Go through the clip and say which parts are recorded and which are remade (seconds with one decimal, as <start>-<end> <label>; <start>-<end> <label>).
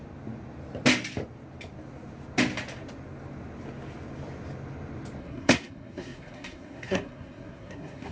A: 0.0-5.2 recorded; 5.2-8.1 remade